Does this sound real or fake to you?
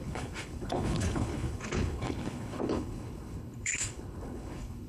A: fake